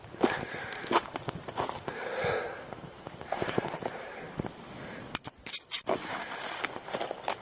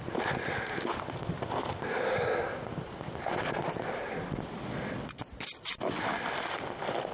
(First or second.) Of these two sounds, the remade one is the first